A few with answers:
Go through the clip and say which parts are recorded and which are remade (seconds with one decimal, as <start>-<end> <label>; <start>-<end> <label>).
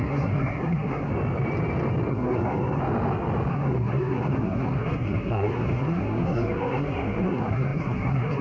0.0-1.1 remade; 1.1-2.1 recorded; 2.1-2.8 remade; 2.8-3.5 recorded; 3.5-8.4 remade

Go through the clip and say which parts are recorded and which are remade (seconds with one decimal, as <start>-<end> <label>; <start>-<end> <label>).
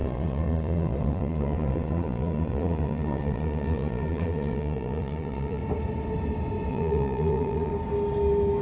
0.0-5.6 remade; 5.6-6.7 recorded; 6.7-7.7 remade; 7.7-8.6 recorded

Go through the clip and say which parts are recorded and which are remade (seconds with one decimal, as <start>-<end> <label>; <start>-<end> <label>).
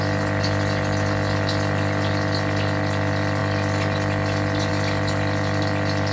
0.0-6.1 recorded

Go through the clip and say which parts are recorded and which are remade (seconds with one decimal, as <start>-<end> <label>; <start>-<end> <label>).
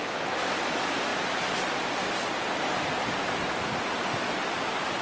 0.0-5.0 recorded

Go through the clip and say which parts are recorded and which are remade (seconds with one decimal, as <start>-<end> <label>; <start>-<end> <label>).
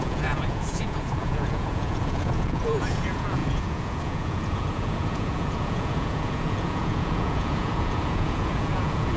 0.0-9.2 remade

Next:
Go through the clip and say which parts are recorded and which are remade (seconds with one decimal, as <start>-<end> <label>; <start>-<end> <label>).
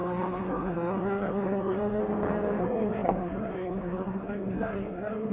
0.0-2.0 remade; 2.0-2.6 recorded; 2.6-5.3 remade